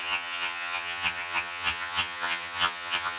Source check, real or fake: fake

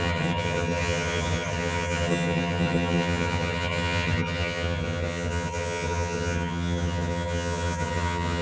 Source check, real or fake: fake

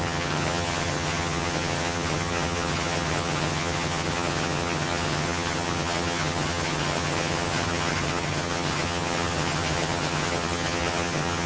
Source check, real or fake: fake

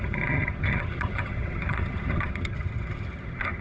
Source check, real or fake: fake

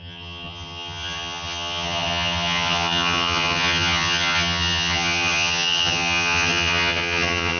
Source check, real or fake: fake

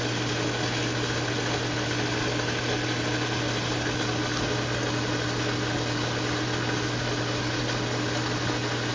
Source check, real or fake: real